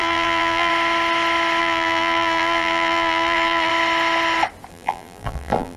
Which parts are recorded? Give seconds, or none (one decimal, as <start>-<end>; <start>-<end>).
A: 0.7-1.6; 3.7-4.7